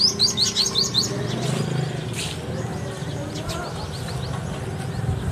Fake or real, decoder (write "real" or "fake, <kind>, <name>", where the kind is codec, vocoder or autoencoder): real